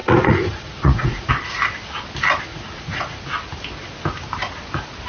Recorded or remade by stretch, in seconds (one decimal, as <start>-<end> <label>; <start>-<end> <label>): 0.0-1.3 remade; 1.3-2.5 recorded; 2.5-3.2 remade; 3.2-5.1 recorded